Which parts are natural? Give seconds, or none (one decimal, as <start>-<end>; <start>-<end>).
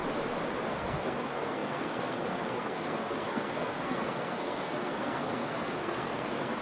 0.0-0.7